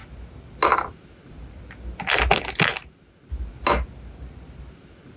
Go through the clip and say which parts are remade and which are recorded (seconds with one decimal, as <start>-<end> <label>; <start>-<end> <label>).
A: 0.0-5.2 recorded